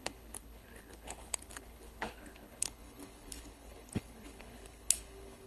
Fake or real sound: fake